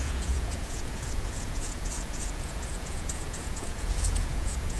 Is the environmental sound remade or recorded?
remade